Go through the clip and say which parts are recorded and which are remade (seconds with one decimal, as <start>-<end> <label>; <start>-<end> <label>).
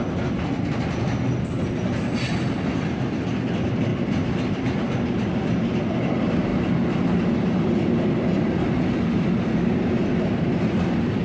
0.0-11.2 recorded